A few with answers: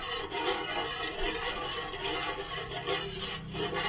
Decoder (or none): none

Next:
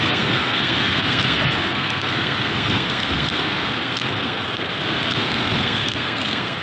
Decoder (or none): codec, SNAC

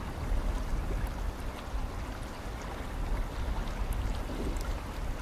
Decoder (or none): none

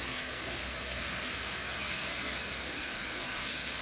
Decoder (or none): codec, SNAC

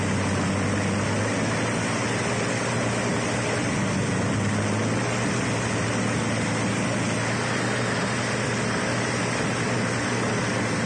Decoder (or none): none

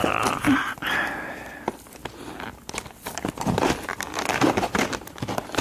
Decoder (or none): none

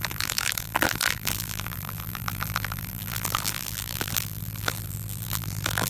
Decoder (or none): vocoder, BigVGAN v2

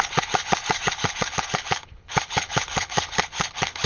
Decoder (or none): codec, HILCodec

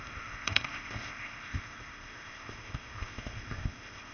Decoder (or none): codec, ZipCodec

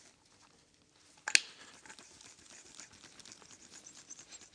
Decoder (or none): none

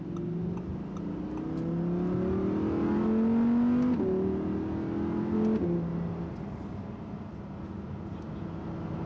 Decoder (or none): none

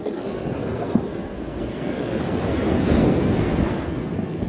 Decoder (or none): codec, SNAC